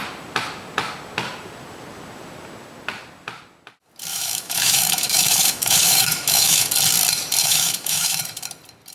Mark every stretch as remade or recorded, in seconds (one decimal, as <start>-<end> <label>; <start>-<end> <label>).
0.0-4.1 recorded; 4.1-6.7 remade; 6.7-7.4 recorded; 7.4-8.2 remade; 8.2-8.9 recorded